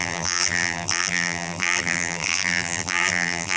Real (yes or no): no